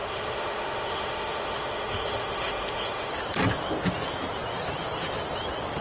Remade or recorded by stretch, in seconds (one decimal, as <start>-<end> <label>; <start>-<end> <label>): 0.0-3.1 remade; 3.1-5.8 recorded